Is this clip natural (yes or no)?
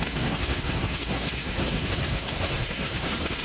no